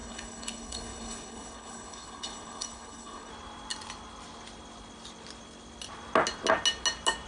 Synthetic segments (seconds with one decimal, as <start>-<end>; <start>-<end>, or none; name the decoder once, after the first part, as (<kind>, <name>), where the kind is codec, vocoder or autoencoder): 0.0-3.3 (codec, HILCodec)